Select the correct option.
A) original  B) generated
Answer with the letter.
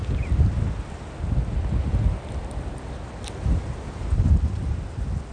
A